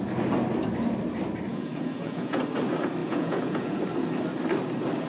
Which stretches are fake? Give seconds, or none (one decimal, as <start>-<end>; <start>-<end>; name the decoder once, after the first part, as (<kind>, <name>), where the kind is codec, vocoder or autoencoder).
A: 1.5-2.4 (vocoder, Vocos); 3.0-3.8